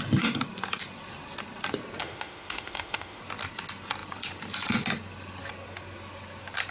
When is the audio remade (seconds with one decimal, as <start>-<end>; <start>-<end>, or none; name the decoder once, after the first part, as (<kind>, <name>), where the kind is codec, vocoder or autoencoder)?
2.0-3.2 (autoencoder, DAC-VAE)